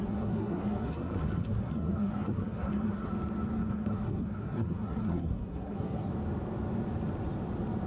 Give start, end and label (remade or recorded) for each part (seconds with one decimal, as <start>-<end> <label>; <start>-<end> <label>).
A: 0.0-3.1 remade; 3.1-3.7 recorded; 3.7-6.1 remade; 6.1-7.9 recorded